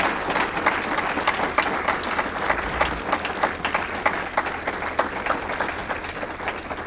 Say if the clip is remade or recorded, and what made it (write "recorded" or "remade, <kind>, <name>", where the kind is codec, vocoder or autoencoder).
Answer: recorded